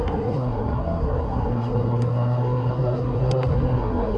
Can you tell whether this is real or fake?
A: fake